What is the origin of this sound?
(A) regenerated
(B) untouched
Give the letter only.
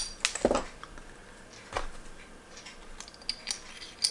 B